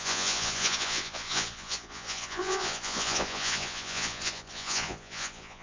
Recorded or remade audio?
remade